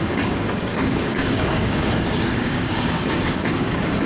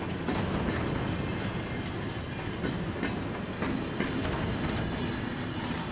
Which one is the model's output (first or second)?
first